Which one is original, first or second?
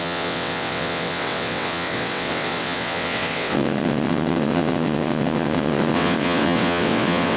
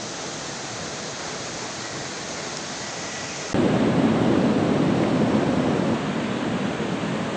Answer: second